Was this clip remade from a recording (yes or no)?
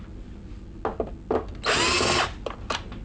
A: no